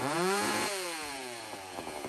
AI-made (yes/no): yes